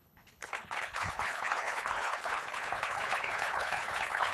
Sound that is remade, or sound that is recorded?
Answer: remade